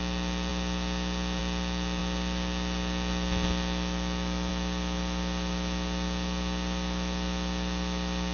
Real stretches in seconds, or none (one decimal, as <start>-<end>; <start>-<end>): 0.0-8.3